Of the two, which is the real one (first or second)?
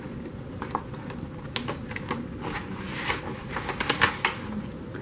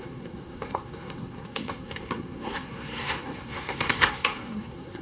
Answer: first